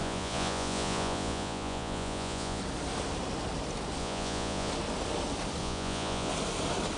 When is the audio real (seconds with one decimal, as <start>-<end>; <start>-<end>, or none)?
2.6-4.0; 4.7-5.6; 6.3-7.0